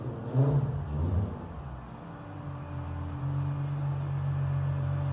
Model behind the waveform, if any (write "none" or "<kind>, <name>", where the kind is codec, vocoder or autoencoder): none